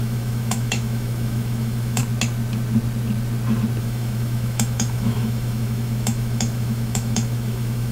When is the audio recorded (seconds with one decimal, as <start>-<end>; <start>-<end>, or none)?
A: 2.0-3.8